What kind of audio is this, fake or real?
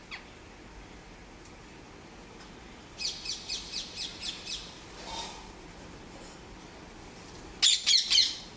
real